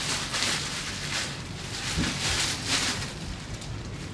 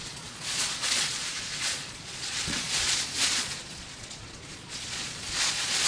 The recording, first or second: first